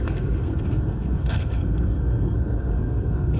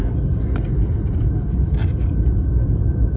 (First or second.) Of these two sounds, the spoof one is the first